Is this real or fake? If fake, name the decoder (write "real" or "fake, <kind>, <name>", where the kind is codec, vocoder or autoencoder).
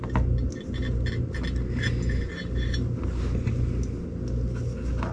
real